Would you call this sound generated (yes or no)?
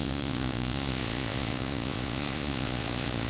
yes